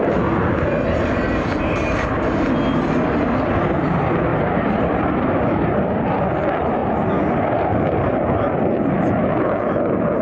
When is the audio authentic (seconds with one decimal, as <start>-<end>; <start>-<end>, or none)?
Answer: 0.0-4.3; 6.2-10.2